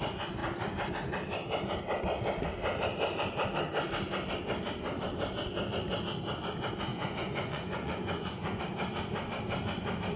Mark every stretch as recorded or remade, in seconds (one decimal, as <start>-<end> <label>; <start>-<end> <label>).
0.0-6.9 recorded; 6.9-8.6 remade; 8.6-10.2 recorded